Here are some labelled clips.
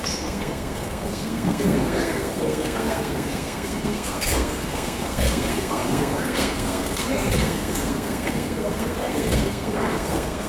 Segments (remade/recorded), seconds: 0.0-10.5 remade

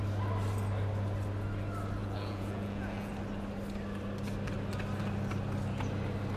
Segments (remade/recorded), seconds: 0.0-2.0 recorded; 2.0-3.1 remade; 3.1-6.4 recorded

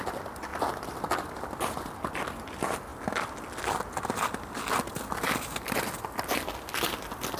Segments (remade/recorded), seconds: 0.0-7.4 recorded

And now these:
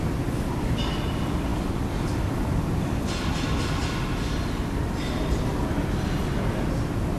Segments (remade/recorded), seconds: 0.0-7.2 recorded